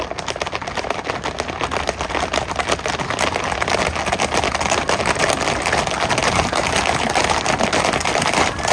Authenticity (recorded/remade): recorded